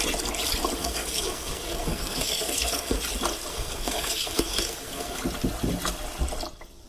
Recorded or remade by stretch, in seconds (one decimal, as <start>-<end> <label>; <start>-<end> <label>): 0.0-0.8 recorded; 0.8-3.0 remade; 3.0-3.5 recorded; 3.5-5.2 remade; 5.2-6.9 recorded